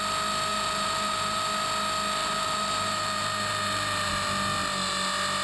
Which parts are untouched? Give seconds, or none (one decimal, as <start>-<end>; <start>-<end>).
0.0-0.5; 1.4-2.2; 4.1-5.4